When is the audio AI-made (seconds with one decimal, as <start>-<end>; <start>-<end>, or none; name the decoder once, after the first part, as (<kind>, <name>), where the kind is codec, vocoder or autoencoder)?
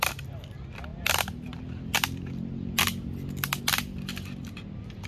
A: none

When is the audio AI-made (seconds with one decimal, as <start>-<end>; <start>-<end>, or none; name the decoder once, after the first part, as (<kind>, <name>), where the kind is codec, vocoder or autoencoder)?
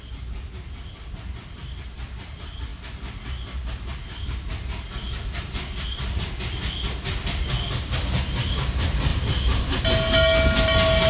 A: 9.1-9.8 (vocoder, BigVGAN v2)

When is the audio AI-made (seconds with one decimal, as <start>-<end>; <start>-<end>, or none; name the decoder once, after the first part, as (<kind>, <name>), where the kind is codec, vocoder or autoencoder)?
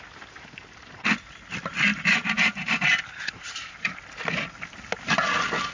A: 1.9-4.0 (vocoder, BigVGAN v2)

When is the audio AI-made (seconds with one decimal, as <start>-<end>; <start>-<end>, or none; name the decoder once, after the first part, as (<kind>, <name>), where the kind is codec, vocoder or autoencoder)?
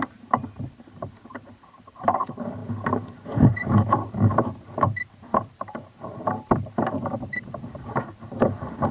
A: 0.0-8.9 (vocoder, BigVGAN v2)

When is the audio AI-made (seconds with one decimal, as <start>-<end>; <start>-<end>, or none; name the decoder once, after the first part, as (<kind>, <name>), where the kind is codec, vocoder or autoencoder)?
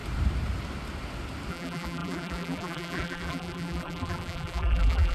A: 1.5-5.1 (vocoder, BigVGAN v2)